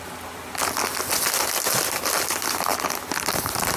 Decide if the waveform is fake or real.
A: real